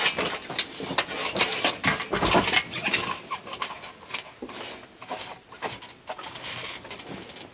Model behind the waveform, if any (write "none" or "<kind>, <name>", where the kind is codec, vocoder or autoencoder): none